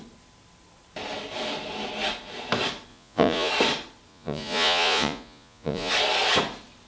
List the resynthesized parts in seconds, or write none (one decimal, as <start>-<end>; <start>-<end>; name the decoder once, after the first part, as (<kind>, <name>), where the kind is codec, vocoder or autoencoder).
2.9-3.5 (vocoder, Vocos); 4.1-5.9